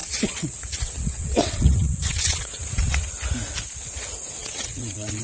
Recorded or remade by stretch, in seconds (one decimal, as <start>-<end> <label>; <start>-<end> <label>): 0.0-3.1 remade; 3.1-4.4 recorded; 4.4-5.2 remade